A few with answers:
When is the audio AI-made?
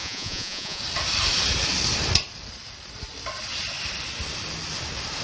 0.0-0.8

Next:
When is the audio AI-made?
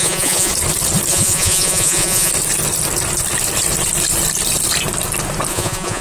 0.0-0.5; 1.1-2.3; 5.5-6.0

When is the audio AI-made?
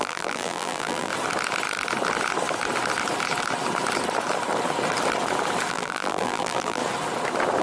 0.0-1.1; 5.7-6.8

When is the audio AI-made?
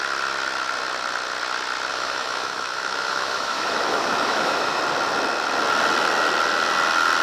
1.9-4.8